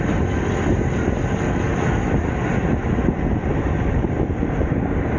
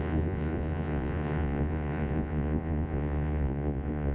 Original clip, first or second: first